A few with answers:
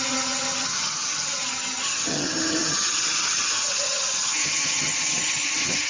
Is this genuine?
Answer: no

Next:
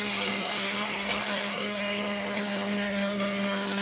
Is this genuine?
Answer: no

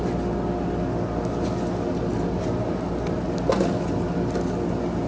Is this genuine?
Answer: yes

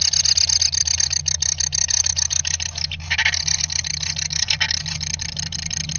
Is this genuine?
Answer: yes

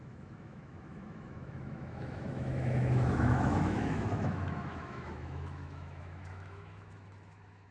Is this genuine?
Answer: no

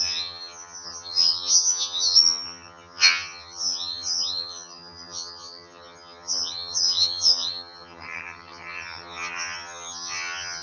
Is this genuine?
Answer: no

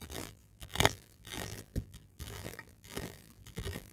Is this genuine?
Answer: no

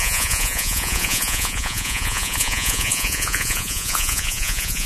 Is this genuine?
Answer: no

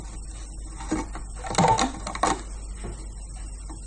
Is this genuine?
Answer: yes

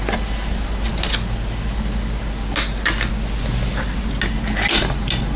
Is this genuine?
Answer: yes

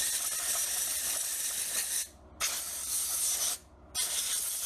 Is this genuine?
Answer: yes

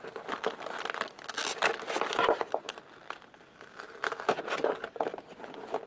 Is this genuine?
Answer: yes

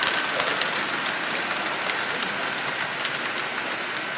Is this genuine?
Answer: yes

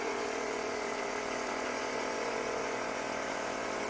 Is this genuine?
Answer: no